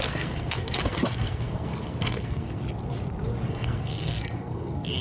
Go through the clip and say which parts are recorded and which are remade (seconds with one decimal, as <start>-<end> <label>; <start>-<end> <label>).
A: 0.0-2.6 remade; 2.6-3.5 recorded; 3.5-5.0 remade